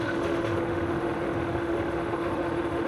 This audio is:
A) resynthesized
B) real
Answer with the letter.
A